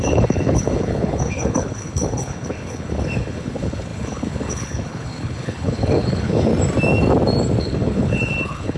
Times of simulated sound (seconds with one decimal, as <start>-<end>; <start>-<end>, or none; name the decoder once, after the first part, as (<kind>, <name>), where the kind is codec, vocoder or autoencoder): 0.0-6.5 (codec, HILCodec); 7.6-8.8